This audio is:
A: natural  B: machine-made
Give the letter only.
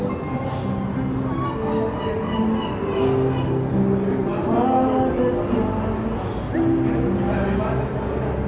A